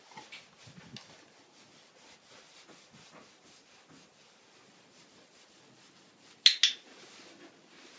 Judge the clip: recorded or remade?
recorded